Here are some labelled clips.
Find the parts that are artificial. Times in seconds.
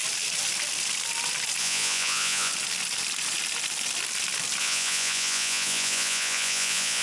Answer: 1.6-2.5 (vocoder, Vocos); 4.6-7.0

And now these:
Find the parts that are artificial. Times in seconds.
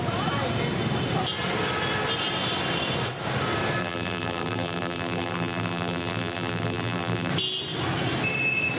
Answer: 3.8-7.3 (vocoder, BigVGAN v2)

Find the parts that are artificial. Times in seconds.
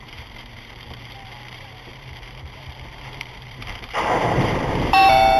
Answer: 0.0-5.4 (vocoder, BigVGAN v2)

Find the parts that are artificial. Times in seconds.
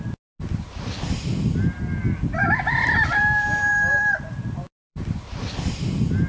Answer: 3.7-5.4 (vocoder, BigVGAN v2)